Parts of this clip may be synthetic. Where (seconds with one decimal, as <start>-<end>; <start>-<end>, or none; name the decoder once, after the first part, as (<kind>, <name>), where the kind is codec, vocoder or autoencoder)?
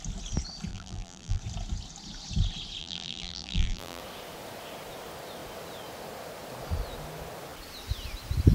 0.7-1.4 (vocoder, BigVGAN v2); 2.8-4.0